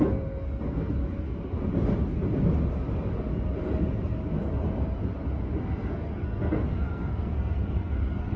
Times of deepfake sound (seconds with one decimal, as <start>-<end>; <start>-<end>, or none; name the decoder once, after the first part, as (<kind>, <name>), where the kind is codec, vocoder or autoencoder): 0.0-1.0 (codec, SNAC); 5.9-8.4